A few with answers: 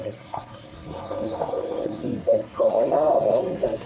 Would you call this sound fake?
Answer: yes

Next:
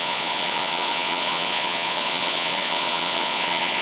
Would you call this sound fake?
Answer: yes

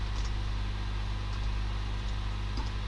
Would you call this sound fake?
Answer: no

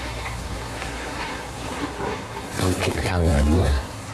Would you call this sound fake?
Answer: yes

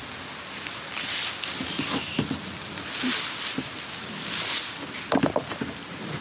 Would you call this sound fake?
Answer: no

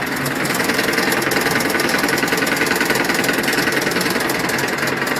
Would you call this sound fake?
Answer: no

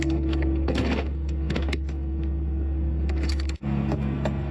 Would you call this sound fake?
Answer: yes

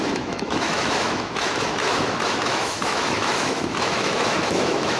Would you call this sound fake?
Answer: yes